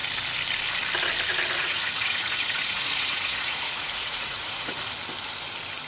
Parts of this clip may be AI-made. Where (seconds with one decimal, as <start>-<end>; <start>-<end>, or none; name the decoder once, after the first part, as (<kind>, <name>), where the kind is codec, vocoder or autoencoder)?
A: 1.6-4.8 (vocoder, Vocos)